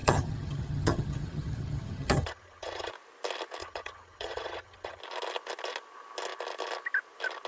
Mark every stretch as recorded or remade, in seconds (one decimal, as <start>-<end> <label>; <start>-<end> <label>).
0.0-2.9 remade; 2.9-3.6 recorded; 3.6-5.0 remade; 5.0-7.5 recorded